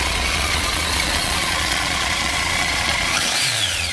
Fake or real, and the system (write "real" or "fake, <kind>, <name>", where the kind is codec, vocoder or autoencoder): fake, vocoder, Vocos